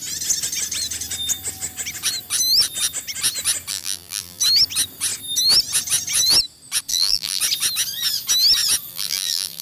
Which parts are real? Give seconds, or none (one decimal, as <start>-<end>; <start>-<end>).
0.0-3.7; 4.4-6.9; 7.4-8.9

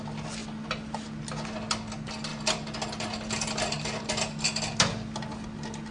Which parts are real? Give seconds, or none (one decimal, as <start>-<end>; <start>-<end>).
0.0-5.9

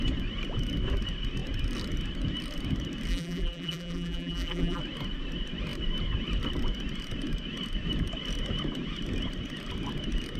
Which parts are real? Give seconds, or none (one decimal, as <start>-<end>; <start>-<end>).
0.0-3.1; 4.8-10.4

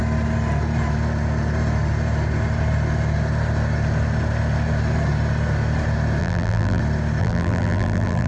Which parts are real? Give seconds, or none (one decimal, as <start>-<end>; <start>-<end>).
0.0-6.2; 6.8-7.2

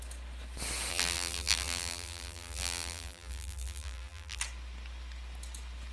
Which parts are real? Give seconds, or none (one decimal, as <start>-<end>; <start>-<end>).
0.0-0.9; 4.4-5.9

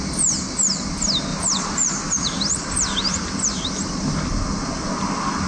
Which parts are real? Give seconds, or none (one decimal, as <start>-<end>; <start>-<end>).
0.0-1.3; 2.6-5.5

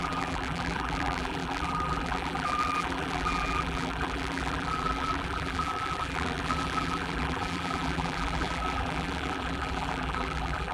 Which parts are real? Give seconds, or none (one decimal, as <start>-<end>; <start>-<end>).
none

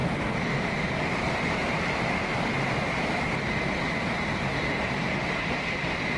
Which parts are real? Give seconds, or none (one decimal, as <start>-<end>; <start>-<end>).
0.0-1.6; 3.4-4.3; 5.6-6.2